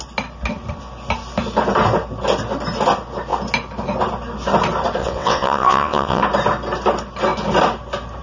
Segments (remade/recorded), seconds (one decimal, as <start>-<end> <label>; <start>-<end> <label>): 0.0-5.0 recorded; 5.0-6.2 remade; 6.2-8.2 recorded